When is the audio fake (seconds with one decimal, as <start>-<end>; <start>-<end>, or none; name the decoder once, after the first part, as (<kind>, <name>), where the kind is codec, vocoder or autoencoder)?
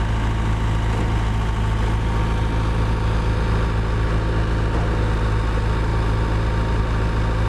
none